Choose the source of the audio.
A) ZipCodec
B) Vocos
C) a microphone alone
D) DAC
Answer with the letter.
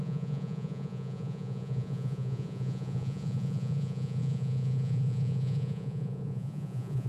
B